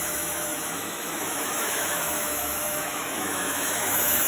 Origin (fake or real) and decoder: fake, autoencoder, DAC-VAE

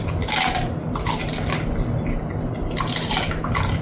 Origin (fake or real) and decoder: real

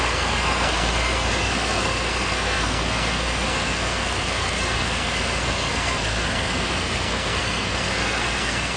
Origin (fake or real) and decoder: fake, codec, SNAC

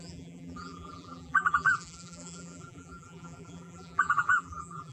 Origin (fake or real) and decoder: fake, vocoder, BigVGAN v2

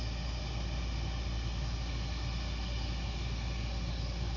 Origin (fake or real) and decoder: real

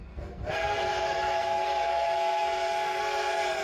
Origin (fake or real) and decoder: fake, codec, SNAC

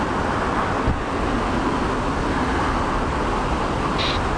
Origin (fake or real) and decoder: real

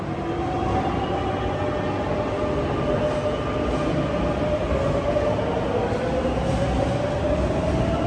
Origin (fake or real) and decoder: real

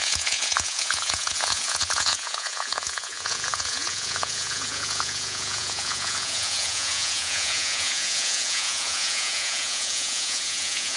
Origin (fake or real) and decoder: fake, vocoder, Vocos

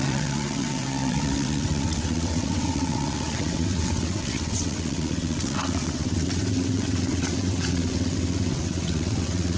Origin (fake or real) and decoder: fake, vocoder, WaveNeXt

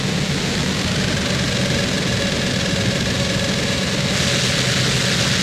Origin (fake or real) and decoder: real